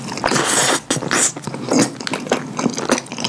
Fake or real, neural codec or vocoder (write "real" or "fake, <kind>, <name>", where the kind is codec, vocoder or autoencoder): real